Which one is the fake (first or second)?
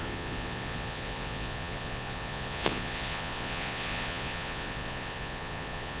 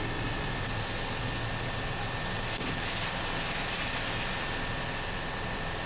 first